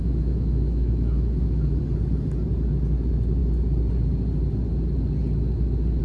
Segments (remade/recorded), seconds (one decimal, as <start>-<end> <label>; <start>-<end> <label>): 0.0-1.8 remade; 1.8-6.0 recorded